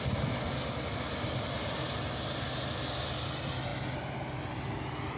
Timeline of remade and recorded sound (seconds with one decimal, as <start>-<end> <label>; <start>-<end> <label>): 0.0-5.2 recorded

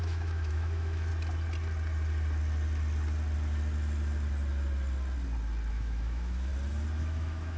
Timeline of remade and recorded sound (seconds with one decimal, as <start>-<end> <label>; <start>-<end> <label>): 0.0-1.1 remade; 1.1-5.7 recorded; 5.7-6.5 remade; 6.5-7.0 recorded; 7.0-7.6 remade

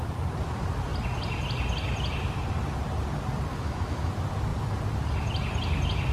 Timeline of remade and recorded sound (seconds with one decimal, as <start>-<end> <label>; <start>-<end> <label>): 0.0-3.5 recorded; 3.5-4.1 remade; 4.1-6.1 recorded

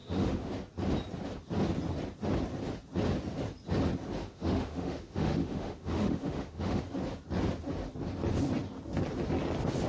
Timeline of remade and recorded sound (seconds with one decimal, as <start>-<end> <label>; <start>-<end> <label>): 0.0-0.5 remade; 0.5-4.2 recorded; 4.2-6.8 remade; 6.8-9.9 recorded